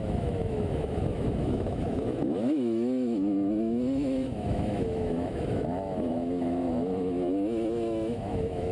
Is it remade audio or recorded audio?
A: remade